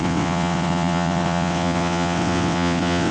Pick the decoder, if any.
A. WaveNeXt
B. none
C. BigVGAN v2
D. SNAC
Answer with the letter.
A